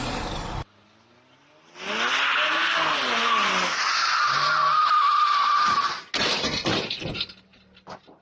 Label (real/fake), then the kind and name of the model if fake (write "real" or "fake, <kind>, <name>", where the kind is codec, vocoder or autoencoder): real